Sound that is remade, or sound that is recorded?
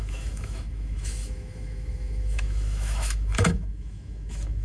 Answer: remade